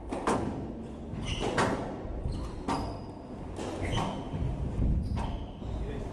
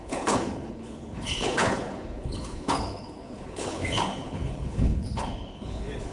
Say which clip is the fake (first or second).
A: second